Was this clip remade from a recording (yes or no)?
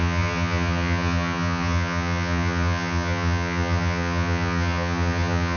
yes